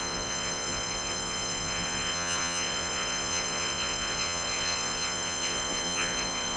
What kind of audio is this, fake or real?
fake